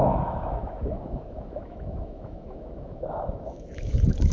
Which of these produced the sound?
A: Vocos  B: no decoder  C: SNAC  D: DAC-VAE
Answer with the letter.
D